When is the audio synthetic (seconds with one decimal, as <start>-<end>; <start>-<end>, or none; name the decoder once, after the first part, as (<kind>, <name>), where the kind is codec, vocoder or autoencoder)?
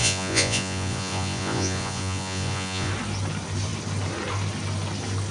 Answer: 0.0-2.9 (vocoder, Vocos)